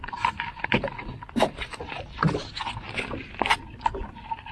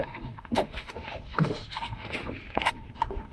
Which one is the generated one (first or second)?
second